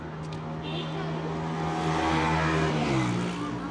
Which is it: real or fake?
real